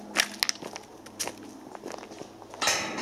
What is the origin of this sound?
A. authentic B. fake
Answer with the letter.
A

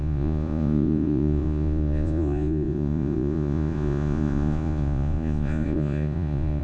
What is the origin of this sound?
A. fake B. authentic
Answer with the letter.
A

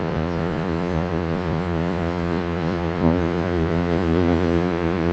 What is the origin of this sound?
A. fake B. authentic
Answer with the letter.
A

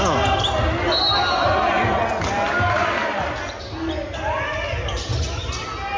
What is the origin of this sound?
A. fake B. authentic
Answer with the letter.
B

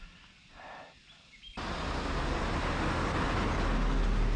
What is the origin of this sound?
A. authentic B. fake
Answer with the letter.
A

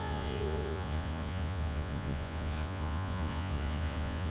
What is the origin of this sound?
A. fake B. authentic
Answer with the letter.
A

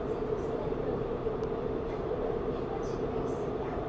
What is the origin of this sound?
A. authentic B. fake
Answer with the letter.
A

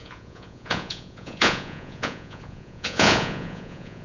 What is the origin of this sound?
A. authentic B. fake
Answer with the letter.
B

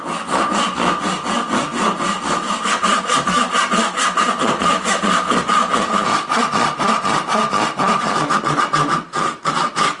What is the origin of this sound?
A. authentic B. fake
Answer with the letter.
A